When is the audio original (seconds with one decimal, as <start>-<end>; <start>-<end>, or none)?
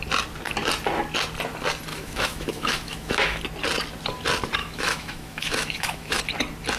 0.0-1.9; 3.4-4.6; 6.2-6.8